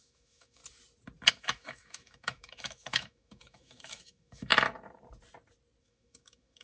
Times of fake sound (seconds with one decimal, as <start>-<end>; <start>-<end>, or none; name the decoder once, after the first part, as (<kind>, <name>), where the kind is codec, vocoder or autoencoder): 0.0-0.6 (autoencoder, DAC-VAE); 1.3-4.5; 5.8-6.6